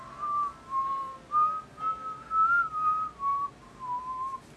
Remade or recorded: recorded